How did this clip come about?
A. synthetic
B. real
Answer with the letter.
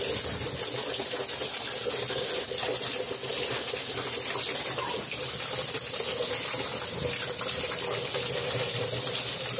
B